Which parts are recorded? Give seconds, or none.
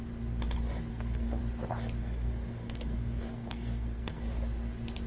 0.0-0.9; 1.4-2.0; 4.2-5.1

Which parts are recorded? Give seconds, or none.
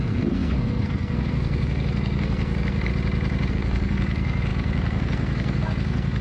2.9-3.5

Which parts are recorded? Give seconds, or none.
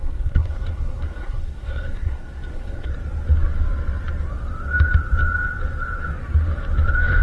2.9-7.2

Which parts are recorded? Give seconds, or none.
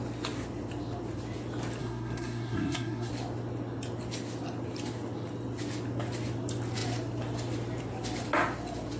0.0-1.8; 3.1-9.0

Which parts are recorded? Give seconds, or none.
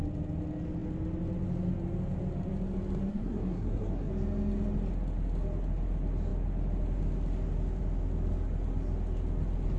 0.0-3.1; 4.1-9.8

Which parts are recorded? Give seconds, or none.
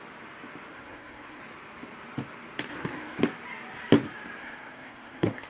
0.0-0.7; 1.4-2.7; 3.2-4.4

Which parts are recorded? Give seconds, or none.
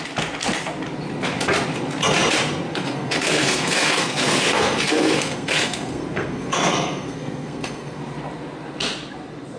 0.0-2.7; 8.0-9.6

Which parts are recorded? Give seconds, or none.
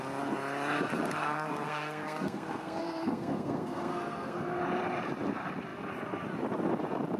0.0-1.2; 4.6-7.2